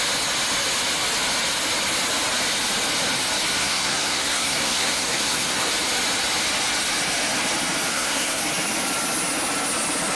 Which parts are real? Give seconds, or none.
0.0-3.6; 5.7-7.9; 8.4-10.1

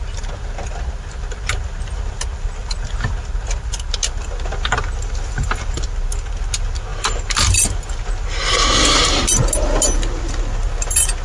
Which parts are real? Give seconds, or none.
0.0-11.2

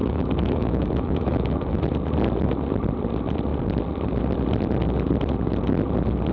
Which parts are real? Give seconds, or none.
1.8-6.3

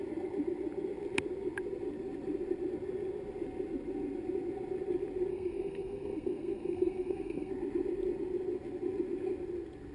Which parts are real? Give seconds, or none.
0.0-5.3; 7.5-9.9

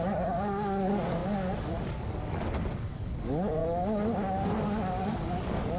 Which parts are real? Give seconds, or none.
3.6-4.6

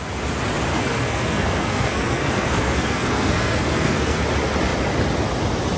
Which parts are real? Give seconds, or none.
0.0-0.7; 4.2-5.8

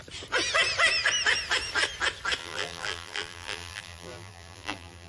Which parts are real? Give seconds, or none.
0.0-2.4

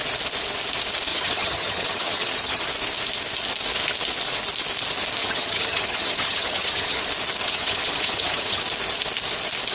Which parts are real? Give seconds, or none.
0.0-1.1; 2.7-5.2; 7.0-7.4; 8.6-9.7